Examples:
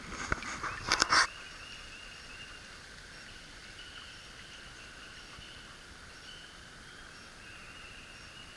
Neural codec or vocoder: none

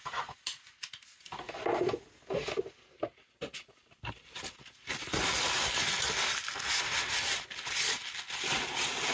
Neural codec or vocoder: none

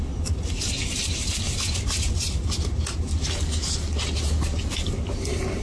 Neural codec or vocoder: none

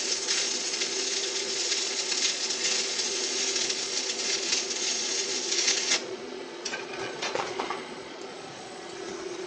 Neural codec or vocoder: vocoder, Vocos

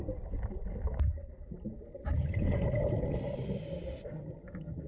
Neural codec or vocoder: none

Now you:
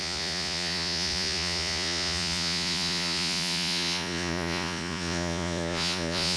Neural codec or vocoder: vocoder, Vocos